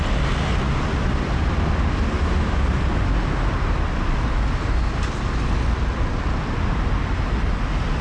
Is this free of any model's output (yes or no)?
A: yes